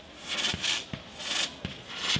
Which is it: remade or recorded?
recorded